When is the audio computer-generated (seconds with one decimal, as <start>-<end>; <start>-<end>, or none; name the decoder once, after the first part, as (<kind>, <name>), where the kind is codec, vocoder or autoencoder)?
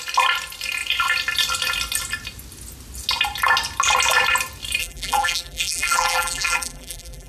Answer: 4.8-7.3 (vocoder, BigVGAN v2)